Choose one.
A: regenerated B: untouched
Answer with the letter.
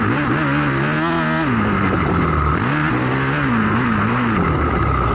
B